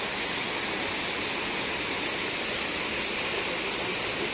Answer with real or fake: real